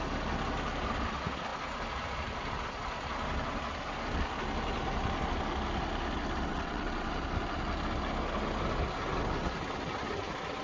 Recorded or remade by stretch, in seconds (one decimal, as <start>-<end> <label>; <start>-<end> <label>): 0.0-6.5 recorded; 6.5-7.1 remade; 7.1-10.6 recorded